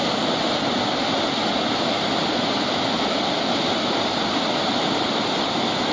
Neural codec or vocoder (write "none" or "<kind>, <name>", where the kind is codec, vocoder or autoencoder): none